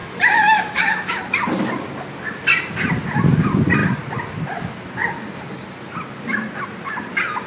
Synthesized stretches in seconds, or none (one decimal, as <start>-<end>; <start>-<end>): 0.0-1.2